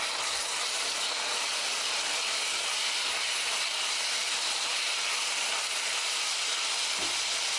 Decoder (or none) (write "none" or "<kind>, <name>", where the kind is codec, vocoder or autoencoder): none